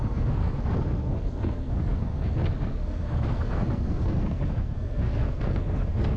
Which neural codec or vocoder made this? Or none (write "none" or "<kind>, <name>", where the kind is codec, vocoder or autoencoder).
codec, SNAC